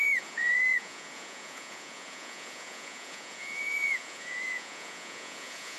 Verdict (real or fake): fake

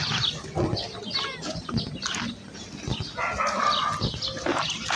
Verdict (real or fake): real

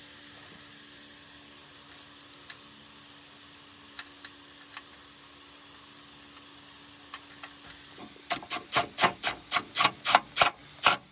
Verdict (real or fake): real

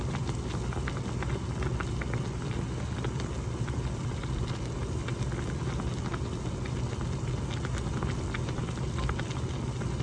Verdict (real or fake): real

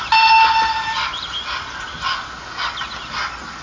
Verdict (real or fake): real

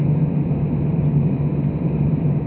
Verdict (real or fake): real